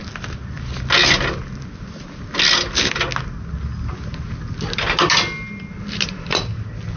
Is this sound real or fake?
real